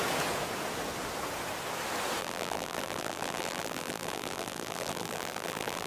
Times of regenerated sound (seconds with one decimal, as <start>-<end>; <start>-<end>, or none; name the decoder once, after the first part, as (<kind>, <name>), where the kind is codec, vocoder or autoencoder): 2.2-5.9 (vocoder, BigVGAN v2)